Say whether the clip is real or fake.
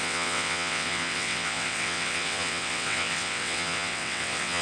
fake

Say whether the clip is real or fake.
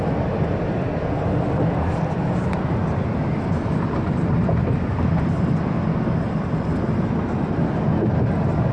real